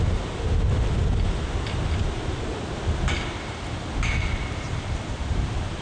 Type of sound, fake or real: real